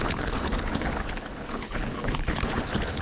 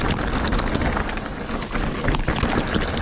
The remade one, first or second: first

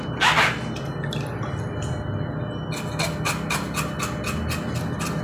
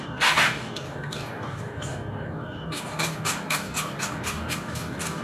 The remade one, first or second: second